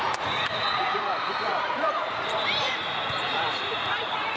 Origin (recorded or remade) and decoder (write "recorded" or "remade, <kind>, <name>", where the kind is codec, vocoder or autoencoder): remade, vocoder, Vocos